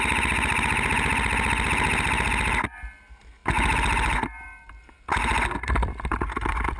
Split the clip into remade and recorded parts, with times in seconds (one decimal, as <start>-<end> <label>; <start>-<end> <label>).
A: 0.0-6.8 recorded